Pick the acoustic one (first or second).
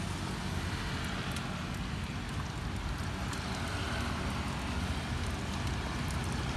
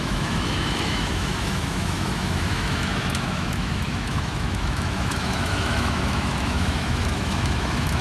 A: first